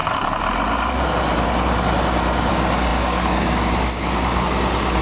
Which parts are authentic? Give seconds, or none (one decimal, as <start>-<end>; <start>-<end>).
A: 0.0-2.5